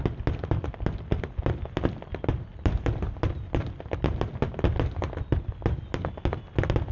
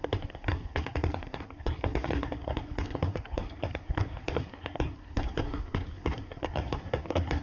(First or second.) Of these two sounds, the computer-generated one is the second